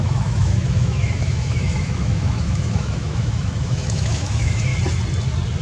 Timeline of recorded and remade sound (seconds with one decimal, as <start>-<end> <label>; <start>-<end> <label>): 0.0-4.7 remade; 4.7-5.6 recorded